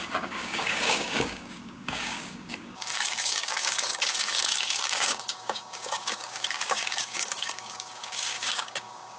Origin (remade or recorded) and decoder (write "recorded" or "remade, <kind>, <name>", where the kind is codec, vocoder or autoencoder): remade, codec, DAC